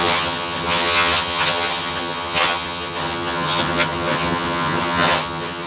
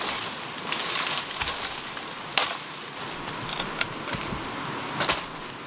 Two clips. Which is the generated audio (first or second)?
first